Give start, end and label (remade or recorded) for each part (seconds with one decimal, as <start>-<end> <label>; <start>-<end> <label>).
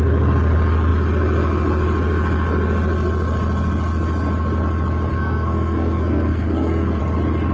0.0-5.1 recorded; 5.1-7.0 remade; 7.0-7.5 recorded